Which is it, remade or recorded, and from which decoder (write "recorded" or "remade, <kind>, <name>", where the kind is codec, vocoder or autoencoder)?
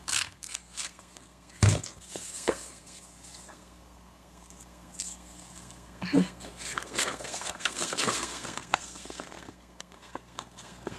remade, codec, SNAC